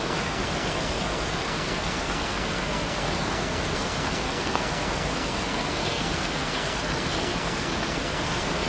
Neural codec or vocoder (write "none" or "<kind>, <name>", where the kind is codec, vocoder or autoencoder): codec, SNAC